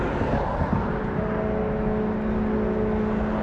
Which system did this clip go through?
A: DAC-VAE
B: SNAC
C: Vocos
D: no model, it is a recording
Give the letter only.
D